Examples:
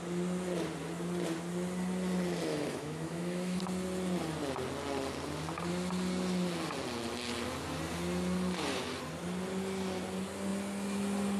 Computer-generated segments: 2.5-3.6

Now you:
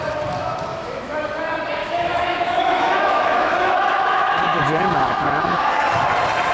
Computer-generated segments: 0.7-1.3; 1.8-5.7

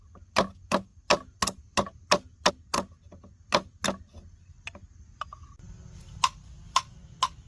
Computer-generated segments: none

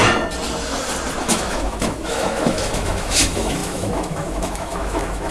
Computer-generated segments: 1.2-5.3

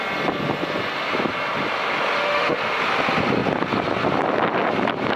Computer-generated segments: 2.2-2.8

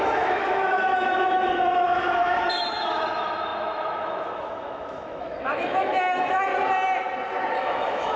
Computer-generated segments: 0.0-6.5; 7.6-8.2